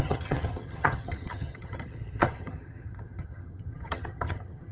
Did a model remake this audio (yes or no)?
yes